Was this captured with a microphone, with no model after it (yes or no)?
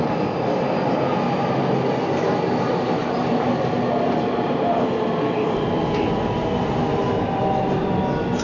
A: yes